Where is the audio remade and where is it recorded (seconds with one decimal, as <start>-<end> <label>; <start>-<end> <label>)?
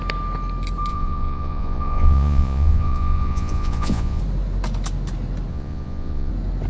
0.0-0.9 recorded; 0.9-4.2 remade; 4.2-5.5 recorded; 5.5-6.3 remade; 6.3-6.7 recorded